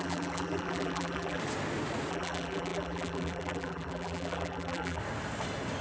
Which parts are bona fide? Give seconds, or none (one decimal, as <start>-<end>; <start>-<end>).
1.4-2.1; 5.0-5.8